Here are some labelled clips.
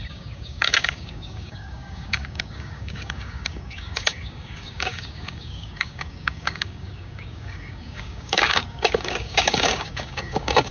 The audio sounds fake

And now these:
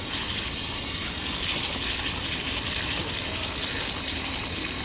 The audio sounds real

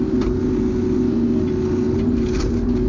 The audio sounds real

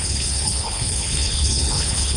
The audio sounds fake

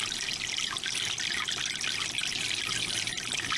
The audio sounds real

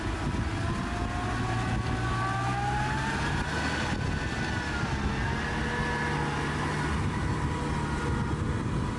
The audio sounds real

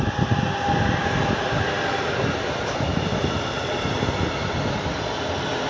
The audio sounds real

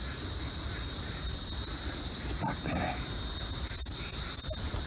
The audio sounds fake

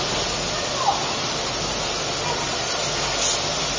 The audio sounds real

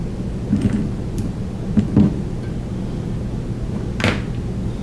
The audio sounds real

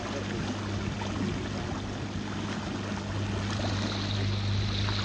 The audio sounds real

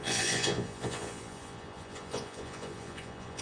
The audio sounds fake